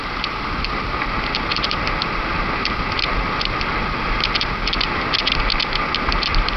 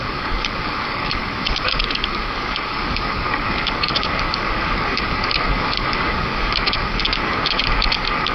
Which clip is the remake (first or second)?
second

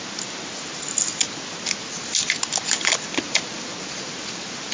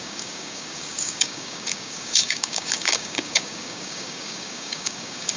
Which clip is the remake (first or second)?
second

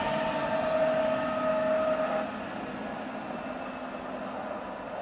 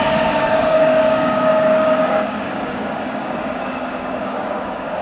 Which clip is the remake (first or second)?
second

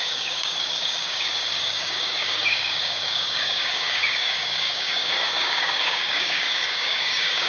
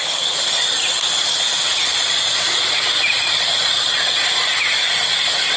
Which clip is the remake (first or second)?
first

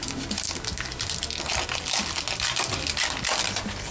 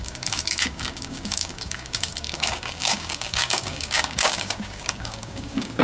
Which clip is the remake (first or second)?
second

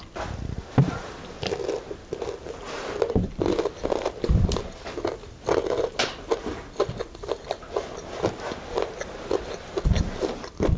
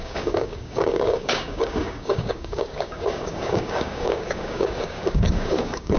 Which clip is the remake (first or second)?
second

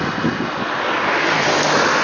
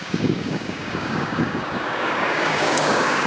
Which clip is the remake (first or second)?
second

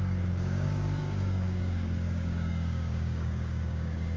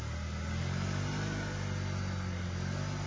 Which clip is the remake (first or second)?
first